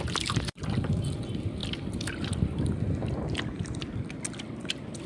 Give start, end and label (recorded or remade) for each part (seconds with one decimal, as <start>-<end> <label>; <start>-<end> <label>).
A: 0.0-5.1 recorded